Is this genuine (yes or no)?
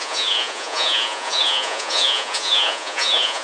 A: no